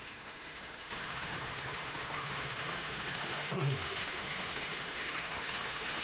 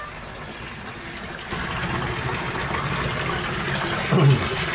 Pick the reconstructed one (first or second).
first